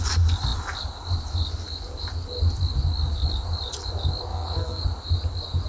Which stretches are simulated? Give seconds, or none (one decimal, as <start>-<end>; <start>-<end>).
4.3-4.8